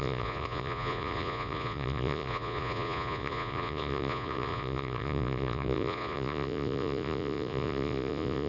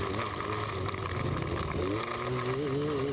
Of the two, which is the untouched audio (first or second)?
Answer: second